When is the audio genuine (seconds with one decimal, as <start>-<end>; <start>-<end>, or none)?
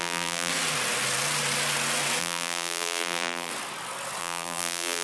0.5-2.2; 3.5-4.2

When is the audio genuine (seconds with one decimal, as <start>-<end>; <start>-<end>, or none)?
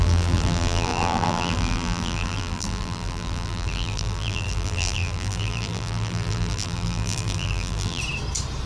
8.0-8.7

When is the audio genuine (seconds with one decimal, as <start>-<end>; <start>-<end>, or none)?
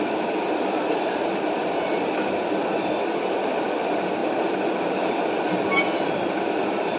4.2-5.5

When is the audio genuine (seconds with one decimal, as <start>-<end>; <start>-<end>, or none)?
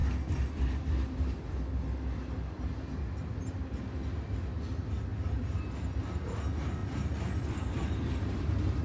0.0-5.1; 5.6-6.8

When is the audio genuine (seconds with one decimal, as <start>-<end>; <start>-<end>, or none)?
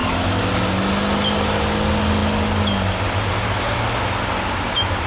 0.0-5.1